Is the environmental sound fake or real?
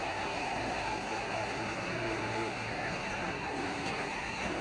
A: fake